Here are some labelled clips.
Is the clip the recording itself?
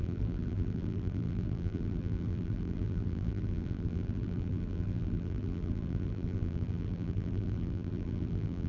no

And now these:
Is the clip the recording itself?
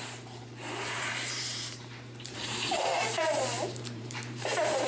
no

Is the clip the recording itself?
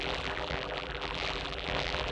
no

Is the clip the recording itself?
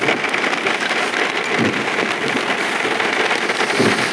yes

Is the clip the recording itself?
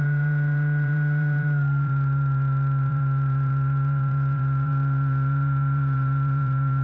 no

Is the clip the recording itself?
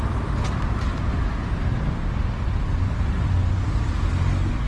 yes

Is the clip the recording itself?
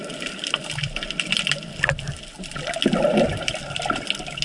yes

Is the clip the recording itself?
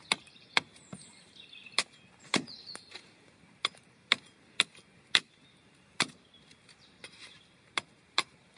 no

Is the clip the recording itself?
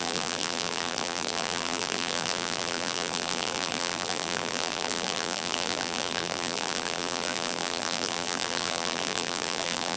no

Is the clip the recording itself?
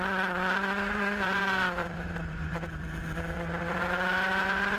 no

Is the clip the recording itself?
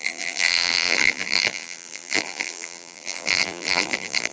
no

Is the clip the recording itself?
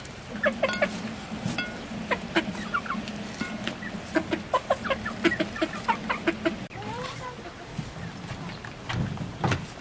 yes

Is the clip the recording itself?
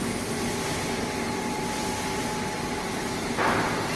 yes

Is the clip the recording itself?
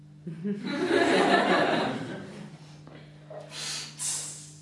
yes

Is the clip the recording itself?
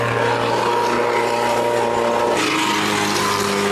yes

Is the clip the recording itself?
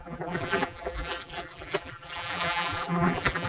no